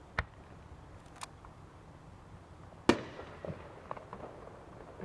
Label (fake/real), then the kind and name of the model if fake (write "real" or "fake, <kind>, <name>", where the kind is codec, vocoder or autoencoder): real